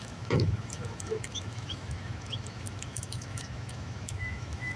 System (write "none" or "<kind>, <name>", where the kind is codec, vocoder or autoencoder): autoencoder, DAC-VAE